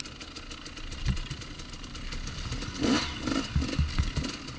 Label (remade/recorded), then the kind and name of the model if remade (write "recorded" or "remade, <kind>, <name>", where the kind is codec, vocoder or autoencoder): recorded